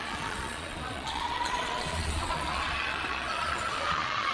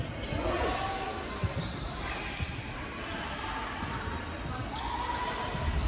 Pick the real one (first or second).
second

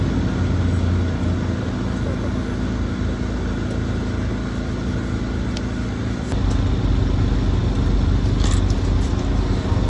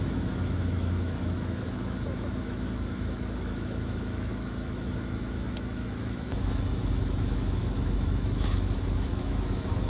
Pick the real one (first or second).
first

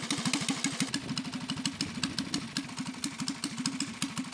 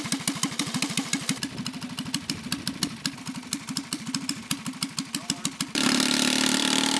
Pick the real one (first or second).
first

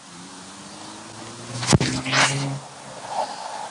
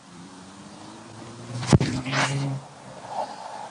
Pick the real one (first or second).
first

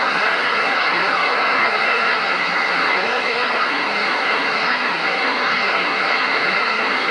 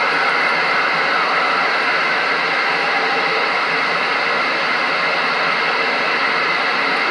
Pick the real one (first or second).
second